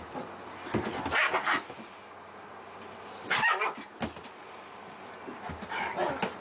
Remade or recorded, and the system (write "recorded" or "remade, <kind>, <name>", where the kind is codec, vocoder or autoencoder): recorded